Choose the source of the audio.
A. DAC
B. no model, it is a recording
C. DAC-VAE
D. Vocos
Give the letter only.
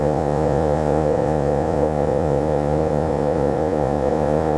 D